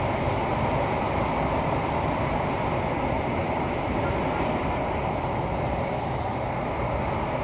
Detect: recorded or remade recorded